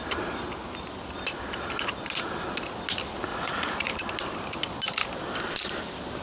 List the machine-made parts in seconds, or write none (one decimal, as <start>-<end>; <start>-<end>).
3.3-4.0

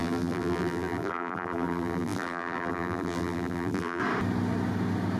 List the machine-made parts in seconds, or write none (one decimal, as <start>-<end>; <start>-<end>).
0.0-4.0

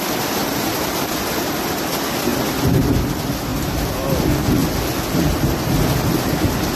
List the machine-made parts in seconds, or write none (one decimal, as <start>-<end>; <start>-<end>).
0.4-1.0

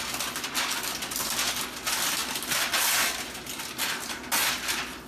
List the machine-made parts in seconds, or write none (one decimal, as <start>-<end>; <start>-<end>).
none